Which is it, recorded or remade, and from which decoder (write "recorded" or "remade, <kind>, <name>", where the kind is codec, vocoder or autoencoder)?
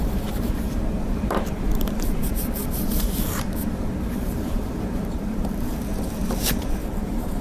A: remade, vocoder, BigVGAN v2